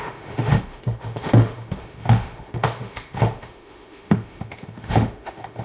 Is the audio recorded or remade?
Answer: remade